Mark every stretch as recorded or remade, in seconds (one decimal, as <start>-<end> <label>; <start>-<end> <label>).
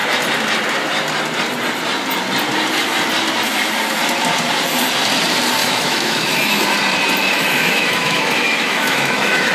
0.0-5.6 recorded; 5.6-6.6 remade; 6.6-7.2 recorded; 7.2-9.5 remade